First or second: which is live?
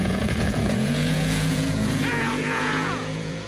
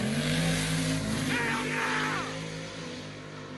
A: second